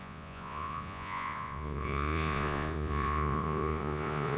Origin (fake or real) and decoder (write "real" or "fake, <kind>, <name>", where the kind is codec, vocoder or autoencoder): fake, vocoder, Vocos